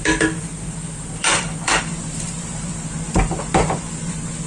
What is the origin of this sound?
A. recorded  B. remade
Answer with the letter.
B